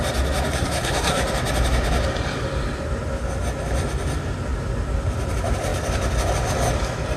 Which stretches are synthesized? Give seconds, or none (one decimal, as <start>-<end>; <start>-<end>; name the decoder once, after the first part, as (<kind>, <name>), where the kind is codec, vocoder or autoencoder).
0.5-1.2 (codec, SNAC)